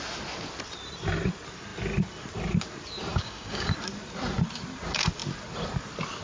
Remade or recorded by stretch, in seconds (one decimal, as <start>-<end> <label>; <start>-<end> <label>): 0.0-3.1 recorded; 3.1-3.7 remade; 3.7-6.2 recorded